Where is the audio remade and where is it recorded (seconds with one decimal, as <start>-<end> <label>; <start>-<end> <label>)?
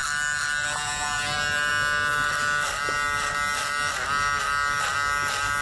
0.0-5.6 recorded